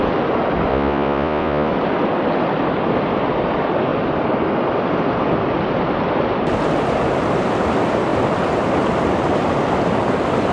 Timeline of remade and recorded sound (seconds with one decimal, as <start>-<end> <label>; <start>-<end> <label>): 0.0-0.7 recorded; 0.7-1.7 remade; 1.7-10.5 recorded